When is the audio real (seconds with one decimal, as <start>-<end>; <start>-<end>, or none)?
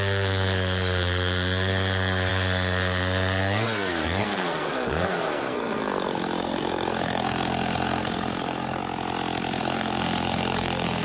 8.8-9.6